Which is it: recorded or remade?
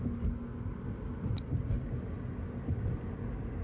recorded